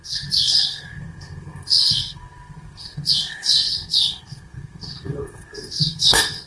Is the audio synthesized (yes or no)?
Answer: yes